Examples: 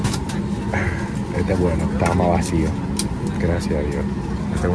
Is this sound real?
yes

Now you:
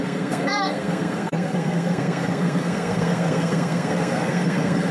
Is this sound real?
no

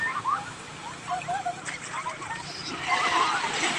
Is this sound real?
yes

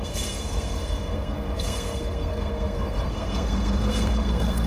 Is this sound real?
no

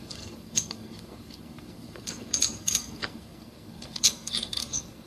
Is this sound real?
no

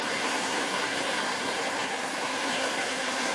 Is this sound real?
no